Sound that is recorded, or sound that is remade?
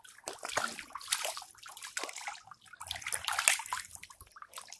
recorded